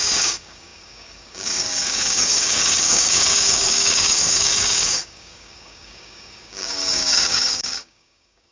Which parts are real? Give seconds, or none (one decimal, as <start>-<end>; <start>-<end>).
none